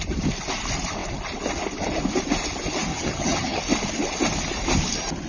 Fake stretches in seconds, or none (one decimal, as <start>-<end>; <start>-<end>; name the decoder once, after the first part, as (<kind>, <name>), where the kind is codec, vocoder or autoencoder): 2.9-3.6 (vocoder, HiFi-GAN)